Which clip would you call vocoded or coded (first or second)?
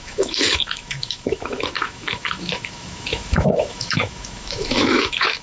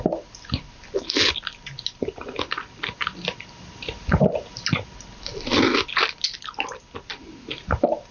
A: first